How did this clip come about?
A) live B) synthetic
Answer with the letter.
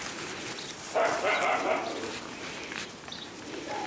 A